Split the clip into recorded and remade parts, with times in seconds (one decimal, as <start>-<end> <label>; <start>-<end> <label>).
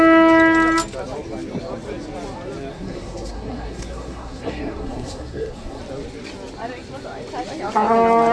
0.0-2.7 recorded; 2.7-5.8 remade; 5.8-8.3 recorded